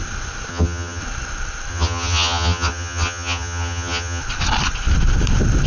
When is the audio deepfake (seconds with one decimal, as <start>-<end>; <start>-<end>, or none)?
0.5-1.0; 1.7-4.2